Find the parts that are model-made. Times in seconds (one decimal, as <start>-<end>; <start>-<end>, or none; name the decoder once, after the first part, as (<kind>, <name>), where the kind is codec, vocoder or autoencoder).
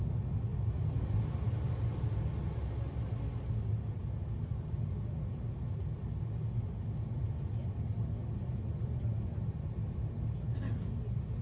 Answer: none